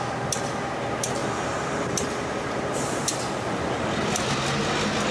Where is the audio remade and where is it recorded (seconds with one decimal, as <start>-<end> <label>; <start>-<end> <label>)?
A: 0.0-1.2 recorded; 1.2-3.7 remade; 3.7-5.1 recorded